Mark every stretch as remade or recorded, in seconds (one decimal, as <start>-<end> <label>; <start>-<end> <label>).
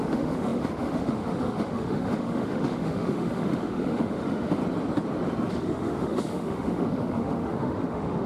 0.0-4.6 remade; 4.6-5.5 recorded; 5.5-8.3 remade